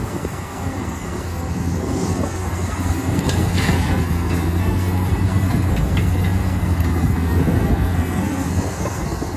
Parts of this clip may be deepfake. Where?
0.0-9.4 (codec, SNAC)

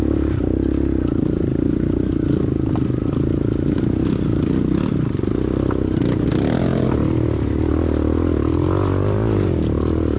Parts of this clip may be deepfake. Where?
none

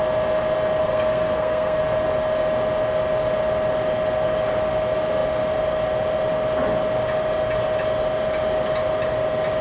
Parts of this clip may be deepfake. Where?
0.8-1.8 (codec, SNAC)

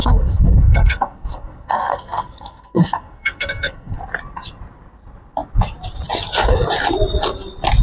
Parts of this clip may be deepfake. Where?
0.0-4.0 (codec, SNAC)